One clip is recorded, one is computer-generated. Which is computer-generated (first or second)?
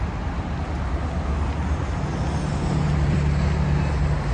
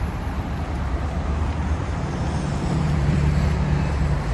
second